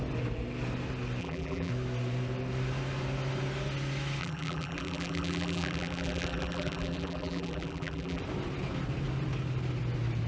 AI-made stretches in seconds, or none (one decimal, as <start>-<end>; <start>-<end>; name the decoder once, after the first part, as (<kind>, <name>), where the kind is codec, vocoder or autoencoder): 1.2-1.7 (vocoder, BigVGAN v2); 4.2-8.2